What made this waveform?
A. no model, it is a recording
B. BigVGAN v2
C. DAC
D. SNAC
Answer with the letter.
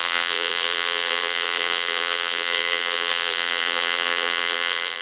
B